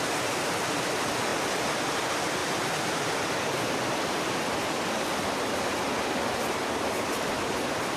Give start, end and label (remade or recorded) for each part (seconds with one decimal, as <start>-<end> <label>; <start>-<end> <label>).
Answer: 0.0-2.4 recorded; 2.4-5.5 remade; 5.5-8.0 recorded